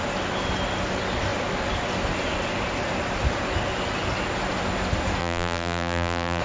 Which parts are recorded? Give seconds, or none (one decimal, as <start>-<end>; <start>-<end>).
0.0-5.2